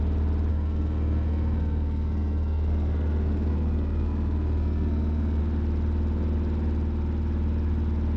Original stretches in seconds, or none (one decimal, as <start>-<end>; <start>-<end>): 0.0-0.5; 5.4-8.2